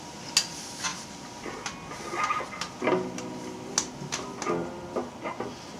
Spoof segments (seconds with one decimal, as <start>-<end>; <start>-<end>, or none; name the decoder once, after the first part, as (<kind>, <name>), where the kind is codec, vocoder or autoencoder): none